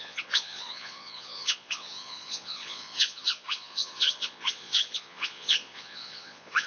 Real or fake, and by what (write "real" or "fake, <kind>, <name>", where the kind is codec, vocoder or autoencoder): fake, vocoder, Vocos